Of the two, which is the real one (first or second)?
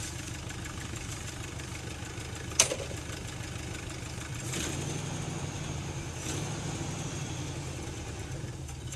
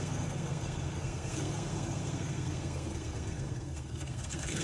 first